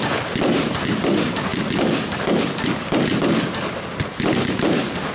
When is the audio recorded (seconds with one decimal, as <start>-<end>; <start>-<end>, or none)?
0.0-5.1